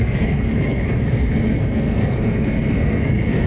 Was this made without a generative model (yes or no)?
no